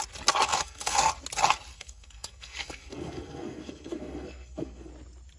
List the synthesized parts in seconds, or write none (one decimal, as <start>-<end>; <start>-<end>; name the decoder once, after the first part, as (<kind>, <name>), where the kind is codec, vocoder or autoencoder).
0.5-1.1 (codec, SNAC); 1.7-4.9